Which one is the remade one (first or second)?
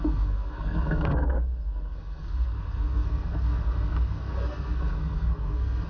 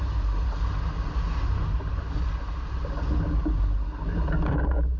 first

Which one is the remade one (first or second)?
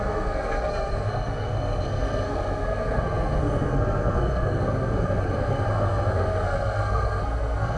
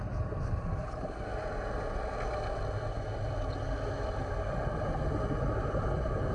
first